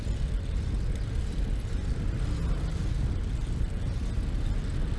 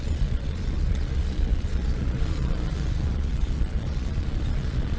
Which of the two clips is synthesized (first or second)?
second